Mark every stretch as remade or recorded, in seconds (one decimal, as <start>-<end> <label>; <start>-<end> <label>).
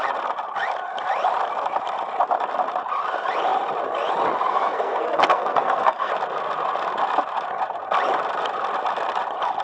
0.0-4.5 recorded; 4.5-6.1 remade; 6.1-9.6 recorded